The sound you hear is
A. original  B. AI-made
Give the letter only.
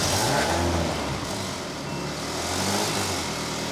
A